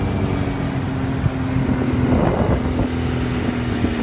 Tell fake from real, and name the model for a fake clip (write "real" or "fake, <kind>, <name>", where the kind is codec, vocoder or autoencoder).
real